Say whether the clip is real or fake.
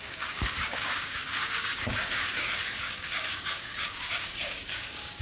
fake